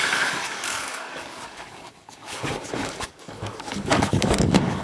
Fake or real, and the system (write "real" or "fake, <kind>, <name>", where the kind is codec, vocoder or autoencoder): fake, codec, DAC